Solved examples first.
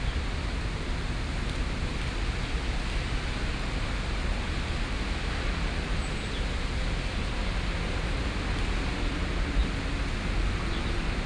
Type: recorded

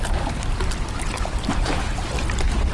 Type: recorded